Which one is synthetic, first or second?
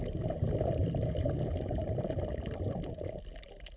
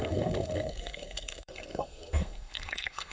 second